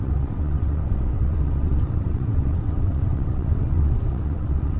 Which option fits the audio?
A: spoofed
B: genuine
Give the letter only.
A